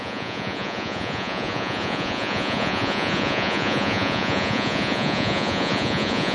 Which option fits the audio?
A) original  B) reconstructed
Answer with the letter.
B